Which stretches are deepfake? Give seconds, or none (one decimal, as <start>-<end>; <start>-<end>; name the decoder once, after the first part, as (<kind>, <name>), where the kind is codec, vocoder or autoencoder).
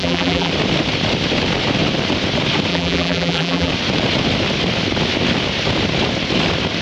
0.0-0.5 (vocoder, BigVGAN v2); 2.7-3.7